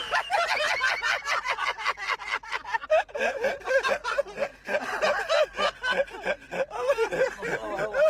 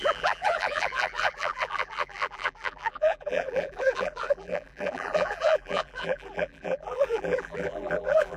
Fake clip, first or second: second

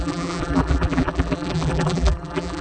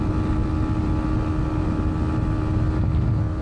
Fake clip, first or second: first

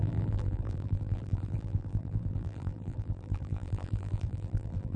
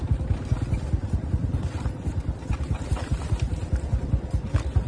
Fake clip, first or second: first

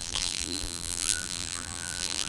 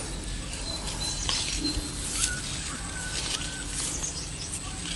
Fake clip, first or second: first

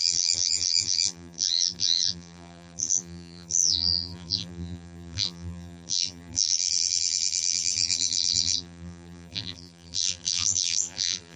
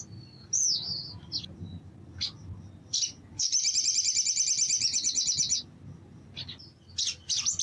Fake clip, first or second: first